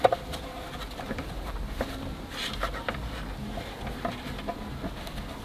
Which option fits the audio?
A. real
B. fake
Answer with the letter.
A